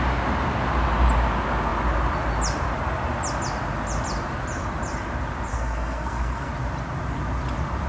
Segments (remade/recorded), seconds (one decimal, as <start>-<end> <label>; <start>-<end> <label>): 0.0-5.5 recorded; 5.5-6.5 remade; 6.5-7.9 recorded